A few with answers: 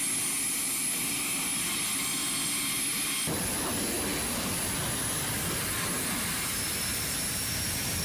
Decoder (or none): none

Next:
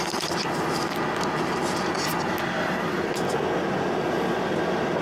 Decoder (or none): none